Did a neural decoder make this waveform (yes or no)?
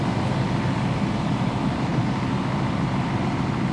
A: no